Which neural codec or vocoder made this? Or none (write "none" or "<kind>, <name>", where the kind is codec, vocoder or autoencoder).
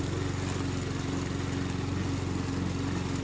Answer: none